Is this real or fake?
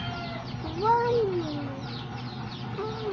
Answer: real